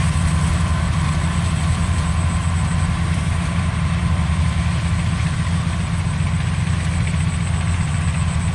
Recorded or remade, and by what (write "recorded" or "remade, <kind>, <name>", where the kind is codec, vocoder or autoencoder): recorded